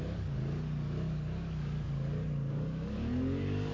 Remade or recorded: remade